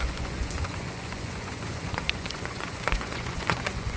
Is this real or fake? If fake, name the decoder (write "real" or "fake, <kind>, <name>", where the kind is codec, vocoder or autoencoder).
fake, vocoder, Vocos